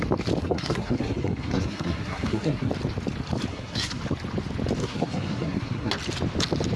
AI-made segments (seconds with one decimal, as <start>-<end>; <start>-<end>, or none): 0.4-2.7; 3.5-4.0; 4.8-5.9